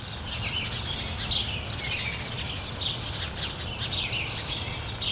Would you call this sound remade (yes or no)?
no